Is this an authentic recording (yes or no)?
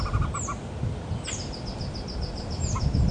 yes